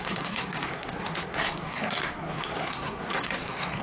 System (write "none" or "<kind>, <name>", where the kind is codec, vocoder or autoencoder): codec, SNAC